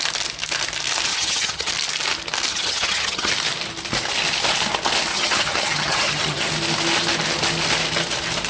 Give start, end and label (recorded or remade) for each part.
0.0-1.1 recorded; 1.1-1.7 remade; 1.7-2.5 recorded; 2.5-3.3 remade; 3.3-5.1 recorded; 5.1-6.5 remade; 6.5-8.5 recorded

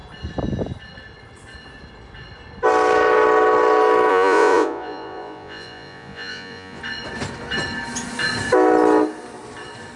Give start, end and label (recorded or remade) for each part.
0.0-4.1 recorded; 4.1-6.8 remade; 6.8-10.0 recorded